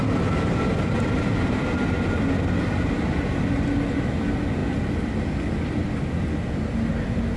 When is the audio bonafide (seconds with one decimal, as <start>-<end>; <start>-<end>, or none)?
0.0-7.4